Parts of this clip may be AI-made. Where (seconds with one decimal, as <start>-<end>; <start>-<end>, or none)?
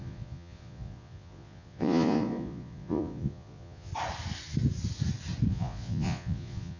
0.0-3.9; 5.5-6.8